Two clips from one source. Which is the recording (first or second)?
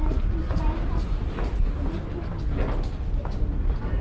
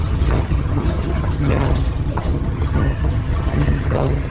first